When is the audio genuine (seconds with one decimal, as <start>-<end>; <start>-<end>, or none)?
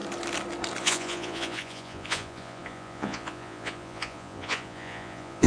0.0-0.8